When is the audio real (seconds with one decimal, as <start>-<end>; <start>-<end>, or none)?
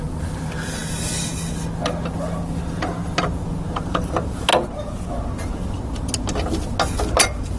0.0-7.6